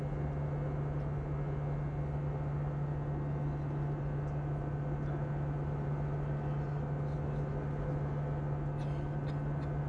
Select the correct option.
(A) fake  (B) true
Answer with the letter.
B